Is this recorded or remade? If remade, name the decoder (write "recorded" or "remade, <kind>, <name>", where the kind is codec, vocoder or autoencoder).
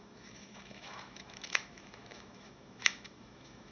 remade, autoencoder, DAC-VAE